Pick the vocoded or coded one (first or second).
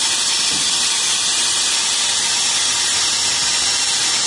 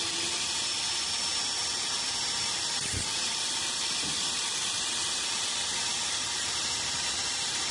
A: second